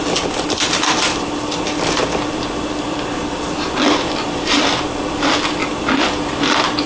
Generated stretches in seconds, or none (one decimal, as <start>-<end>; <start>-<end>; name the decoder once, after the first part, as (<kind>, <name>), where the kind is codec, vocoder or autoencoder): none